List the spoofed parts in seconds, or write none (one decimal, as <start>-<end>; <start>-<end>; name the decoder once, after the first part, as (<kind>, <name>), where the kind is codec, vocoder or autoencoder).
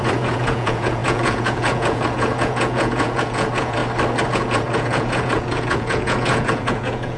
0.0-3.8 (vocoder, Vocos); 4.3-7.2